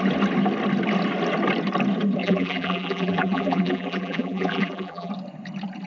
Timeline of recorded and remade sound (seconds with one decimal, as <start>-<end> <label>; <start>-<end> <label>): 0.0-2.2 recorded; 2.2-5.1 remade; 5.1-5.9 recorded